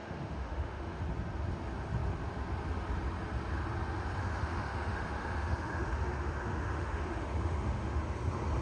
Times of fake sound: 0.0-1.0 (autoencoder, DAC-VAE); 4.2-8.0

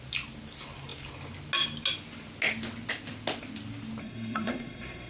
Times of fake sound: 4.0-5.1 (codec, SNAC)

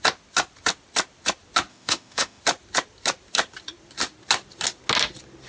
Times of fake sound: 1.7-2.4 (autoencoder, DAC-VAE)

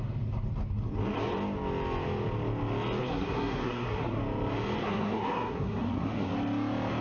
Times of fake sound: 3.0-4.2 (codec, SNAC); 4.8-6.3